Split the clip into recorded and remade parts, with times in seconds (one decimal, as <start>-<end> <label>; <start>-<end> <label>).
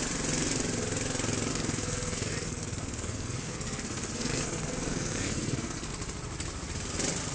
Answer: 0.0-1.5 recorded; 1.5-5.9 remade; 5.9-7.3 recorded